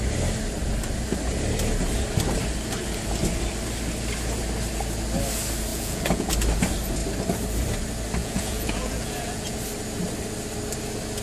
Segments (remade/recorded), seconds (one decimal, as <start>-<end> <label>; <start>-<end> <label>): 0.0-5.7 recorded; 5.7-6.3 remade; 6.3-8.2 recorded; 8.2-9.6 remade; 9.6-11.2 recorded